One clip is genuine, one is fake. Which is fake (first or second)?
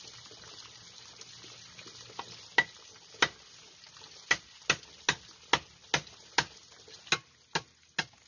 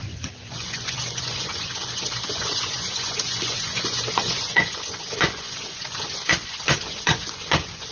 second